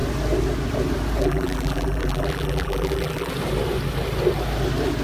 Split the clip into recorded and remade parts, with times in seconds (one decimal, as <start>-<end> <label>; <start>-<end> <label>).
0.0-1.2 recorded; 1.2-3.3 remade; 3.3-5.0 recorded